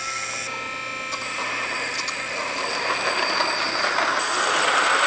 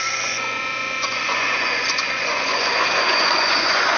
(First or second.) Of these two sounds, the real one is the first